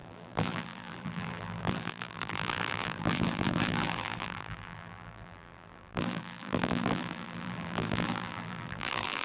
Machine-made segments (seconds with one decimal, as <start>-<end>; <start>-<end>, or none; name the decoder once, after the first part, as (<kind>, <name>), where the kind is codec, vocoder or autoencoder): 0.0-9.2 (vocoder, BigVGAN v2)